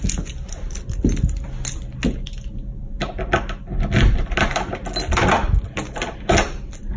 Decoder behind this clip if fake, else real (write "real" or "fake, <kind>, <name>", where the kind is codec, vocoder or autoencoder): real